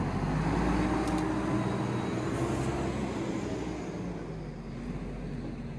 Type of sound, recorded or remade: recorded